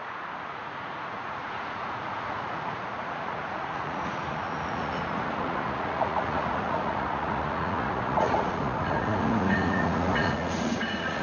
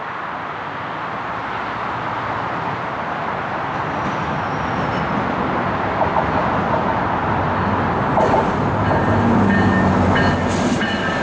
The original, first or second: second